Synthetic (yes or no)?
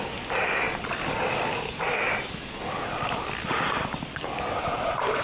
no